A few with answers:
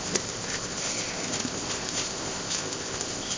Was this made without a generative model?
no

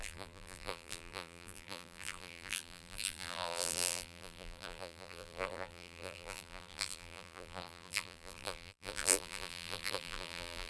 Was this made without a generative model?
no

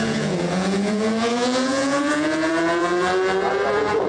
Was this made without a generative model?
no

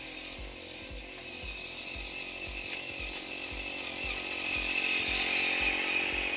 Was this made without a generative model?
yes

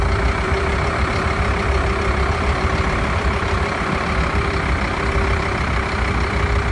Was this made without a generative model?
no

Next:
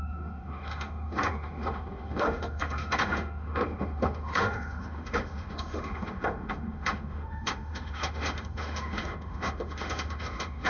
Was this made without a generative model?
no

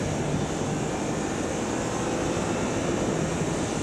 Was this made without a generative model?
yes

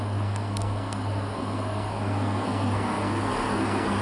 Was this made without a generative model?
no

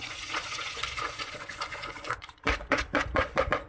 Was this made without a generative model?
no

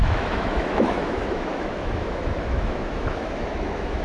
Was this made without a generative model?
no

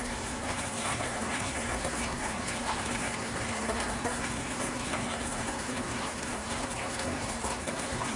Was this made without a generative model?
no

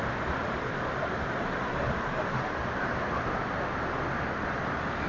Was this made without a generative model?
yes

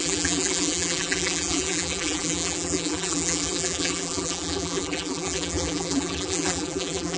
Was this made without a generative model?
no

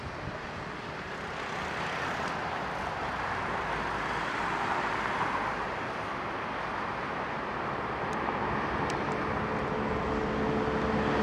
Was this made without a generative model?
yes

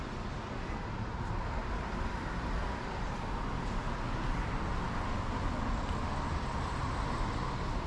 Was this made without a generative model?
yes